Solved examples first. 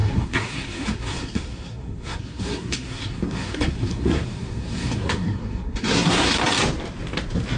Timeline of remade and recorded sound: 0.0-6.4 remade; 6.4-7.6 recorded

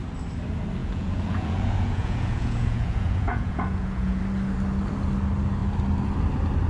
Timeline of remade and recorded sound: 0.0-0.8 recorded; 0.8-4.2 remade; 4.2-6.7 recorded

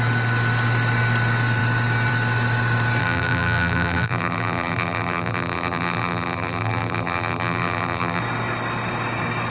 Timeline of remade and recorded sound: 0.0-3.0 recorded; 3.0-8.2 remade; 8.2-9.5 recorded

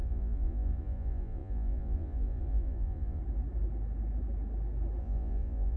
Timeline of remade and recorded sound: 0.0-3.2 remade; 3.2-5.0 recorded; 5.0-5.8 remade

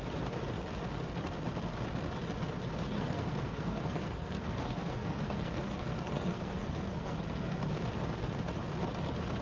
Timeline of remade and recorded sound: 0.0-2.9 recorded; 2.9-7.6 remade; 7.6-9.4 recorded

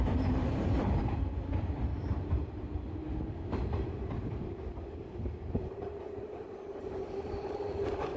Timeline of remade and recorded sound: 0.0-8.2 remade

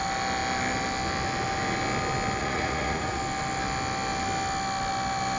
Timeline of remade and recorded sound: 0.0-2.4 recorded; 2.4-3.2 remade; 3.2-5.4 recorded